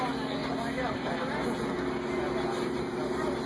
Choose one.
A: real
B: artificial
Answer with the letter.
A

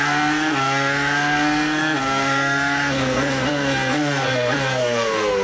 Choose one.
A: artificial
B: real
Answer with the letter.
A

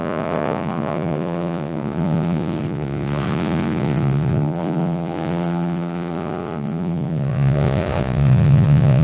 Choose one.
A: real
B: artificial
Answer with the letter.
B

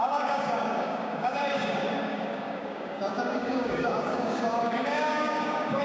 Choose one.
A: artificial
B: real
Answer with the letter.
A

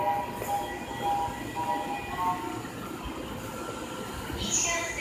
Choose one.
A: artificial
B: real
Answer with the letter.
B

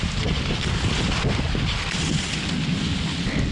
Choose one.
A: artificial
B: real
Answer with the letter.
B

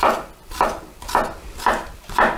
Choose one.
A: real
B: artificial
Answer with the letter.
A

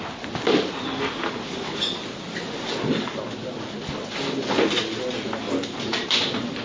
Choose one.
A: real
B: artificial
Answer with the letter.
A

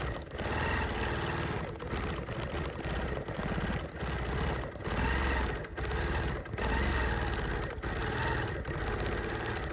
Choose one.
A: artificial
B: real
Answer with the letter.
B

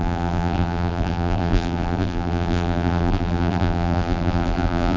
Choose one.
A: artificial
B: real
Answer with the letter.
A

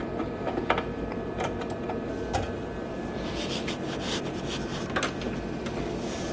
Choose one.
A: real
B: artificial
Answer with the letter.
A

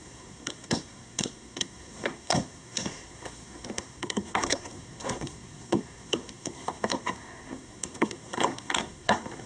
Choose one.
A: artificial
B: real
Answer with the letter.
A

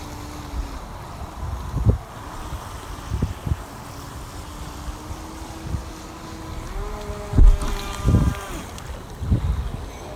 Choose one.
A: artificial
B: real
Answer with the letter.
B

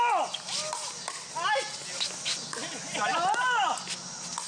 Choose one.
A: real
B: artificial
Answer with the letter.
A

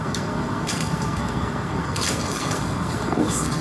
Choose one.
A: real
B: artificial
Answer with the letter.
B